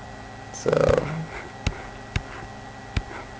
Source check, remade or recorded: recorded